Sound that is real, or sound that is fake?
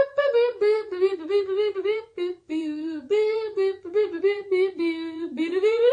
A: fake